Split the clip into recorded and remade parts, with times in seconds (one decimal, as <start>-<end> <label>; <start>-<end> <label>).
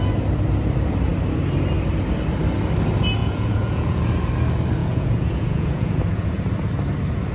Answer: 0.0-3.2 recorded; 3.2-4.0 remade; 4.0-4.8 recorded; 4.8-6.4 remade; 6.4-7.3 recorded